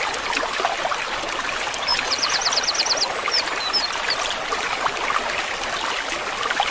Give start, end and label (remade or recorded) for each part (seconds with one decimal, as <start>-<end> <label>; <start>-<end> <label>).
0.0-6.7 recorded